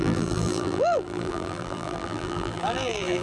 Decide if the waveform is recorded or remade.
remade